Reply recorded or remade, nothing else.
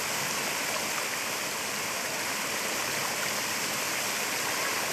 recorded